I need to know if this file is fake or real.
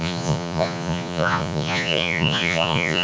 fake